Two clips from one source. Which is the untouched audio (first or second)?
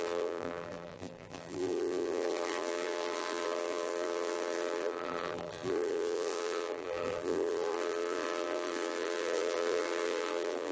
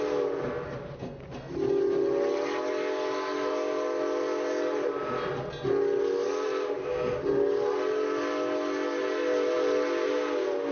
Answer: second